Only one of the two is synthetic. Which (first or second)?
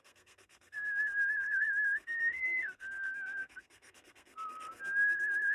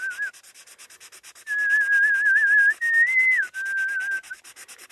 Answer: first